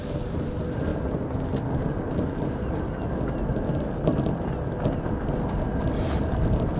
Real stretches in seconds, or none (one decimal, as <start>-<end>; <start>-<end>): 0.0-6.8